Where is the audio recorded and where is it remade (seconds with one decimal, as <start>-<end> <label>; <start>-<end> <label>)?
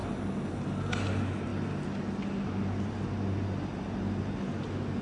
0.0-5.0 recorded